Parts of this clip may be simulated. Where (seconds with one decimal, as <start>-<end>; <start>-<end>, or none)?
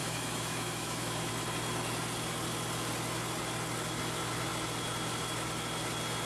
0.0-1.3